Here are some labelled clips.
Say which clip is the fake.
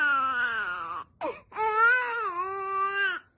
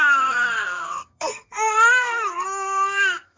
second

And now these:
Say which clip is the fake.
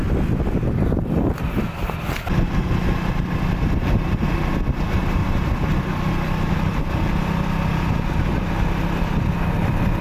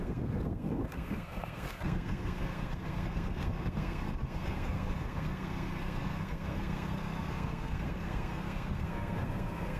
second